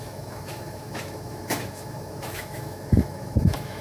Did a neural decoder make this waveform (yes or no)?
yes